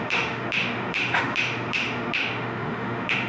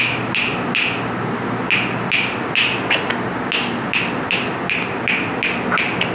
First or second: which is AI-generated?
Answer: first